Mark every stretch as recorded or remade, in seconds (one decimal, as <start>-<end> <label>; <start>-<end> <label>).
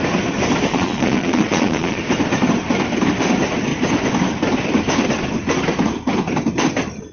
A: 0.0-0.7 recorded; 0.7-2.0 remade; 2.0-7.1 recorded